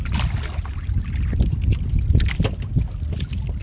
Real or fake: real